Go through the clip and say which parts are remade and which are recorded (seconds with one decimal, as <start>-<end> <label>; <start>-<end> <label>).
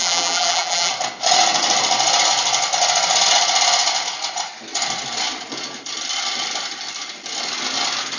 0.0-0.9 remade; 0.9-8.2 recorded